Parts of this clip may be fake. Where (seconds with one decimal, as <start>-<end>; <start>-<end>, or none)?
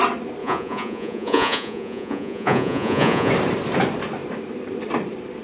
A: 0.4-3.3